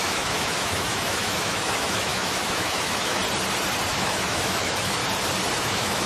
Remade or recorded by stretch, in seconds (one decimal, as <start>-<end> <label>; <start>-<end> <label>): 0.0-3.2 remade; 3.2-3.9 recorded; 3.9-5.0 remade; 5.0-5.6 recorded; 5.6-6.1 remade